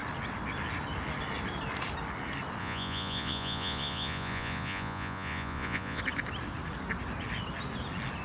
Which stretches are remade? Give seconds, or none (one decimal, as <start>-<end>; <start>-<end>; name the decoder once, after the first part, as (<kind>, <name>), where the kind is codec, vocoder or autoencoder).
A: 2.6-6.0 (vocoder, Vocos)

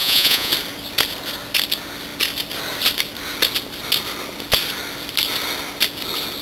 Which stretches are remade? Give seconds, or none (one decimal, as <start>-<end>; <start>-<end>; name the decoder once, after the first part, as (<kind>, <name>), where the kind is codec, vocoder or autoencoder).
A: 0.0-0.5 (vocoder, Vocos)

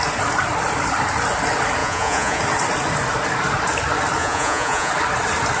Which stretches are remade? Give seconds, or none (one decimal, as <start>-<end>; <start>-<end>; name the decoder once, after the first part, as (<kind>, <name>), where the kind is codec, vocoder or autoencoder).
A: 1.8-2.4 (vocoder, Vocos); 4.2-4.9

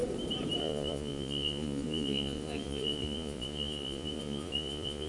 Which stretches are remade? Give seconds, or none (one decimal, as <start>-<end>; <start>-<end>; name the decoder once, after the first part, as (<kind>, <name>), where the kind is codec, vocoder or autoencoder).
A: 0.6-5.1 (vocoder, Vocos)

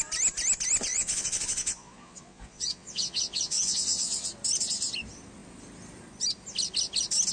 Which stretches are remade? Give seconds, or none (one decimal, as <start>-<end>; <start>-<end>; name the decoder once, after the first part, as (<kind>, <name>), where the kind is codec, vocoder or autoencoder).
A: 0.9-4.3 (vocoder, Vocos)

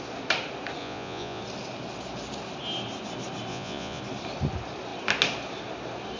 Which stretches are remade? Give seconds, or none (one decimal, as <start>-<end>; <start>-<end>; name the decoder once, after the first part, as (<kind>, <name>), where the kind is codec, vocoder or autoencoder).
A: 0.8-1.4 (vocoder, Vocos); 3.5-4.0

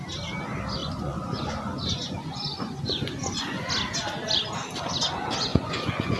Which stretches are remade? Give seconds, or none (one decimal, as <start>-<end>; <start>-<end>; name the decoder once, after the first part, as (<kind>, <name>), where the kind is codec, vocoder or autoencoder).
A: 0.8-3.7 (vocoder, Vocos); 5.5-6.2

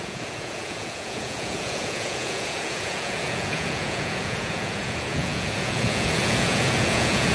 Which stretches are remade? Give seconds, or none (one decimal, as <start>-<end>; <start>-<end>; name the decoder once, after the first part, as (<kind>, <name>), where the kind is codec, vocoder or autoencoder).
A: 0.0-7.3 (vocoder, Vocos)